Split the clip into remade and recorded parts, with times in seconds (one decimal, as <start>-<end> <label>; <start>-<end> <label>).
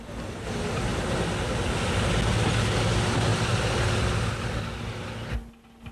0.0-0.9 recorded; 0.9-1.5 remade; 1.5-3.3 recorded; 3.3-4.0 remade; 4.0-5.9 recorded